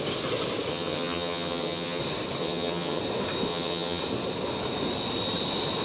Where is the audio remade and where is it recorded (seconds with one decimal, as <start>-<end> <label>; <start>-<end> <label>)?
0.0-0.7 recorded; 0.7-2.0 remade; 2.0-2.4 recorded; 2.4-3.0 remade; 3.0-3.5 recorded; 3.5-4.0 remade; 4.0-5.8 recorded